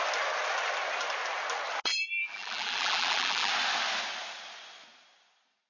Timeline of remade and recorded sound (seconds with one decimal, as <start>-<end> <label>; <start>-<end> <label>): 0.0-1.9 recorded; 1.9-3.5 remade; 3.5-5.7 recorded